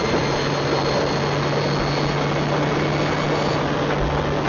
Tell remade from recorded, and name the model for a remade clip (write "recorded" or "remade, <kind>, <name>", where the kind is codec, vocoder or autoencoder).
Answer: recorded